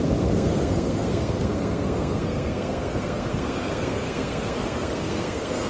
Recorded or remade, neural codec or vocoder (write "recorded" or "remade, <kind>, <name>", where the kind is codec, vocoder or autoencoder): remade, codec, SNAC